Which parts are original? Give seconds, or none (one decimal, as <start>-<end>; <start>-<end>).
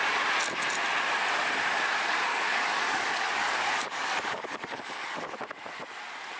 0.0-2.3; 5.4-6.4